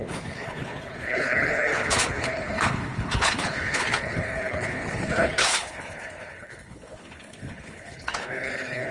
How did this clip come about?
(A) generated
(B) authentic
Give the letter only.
A